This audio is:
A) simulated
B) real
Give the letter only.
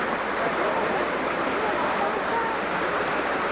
B